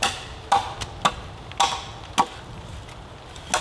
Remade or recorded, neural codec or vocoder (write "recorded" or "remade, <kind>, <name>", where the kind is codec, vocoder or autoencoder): recorded